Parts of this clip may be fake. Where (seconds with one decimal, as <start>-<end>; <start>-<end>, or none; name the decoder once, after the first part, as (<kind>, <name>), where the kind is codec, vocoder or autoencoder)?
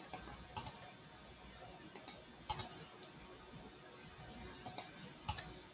none